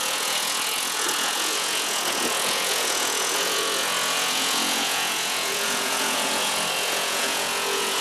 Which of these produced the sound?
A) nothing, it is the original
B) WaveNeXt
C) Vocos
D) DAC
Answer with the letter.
C